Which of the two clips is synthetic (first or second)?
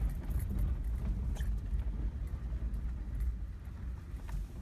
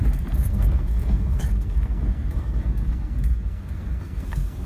second